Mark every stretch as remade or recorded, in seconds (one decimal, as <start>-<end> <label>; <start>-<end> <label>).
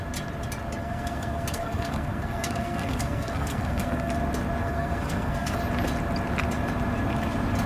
0.0-0.8 recorded; 0.8-4.1 remade; 4.1-4.6 recorded; 4.6-5.6 remade; 5.6-7.7 recorded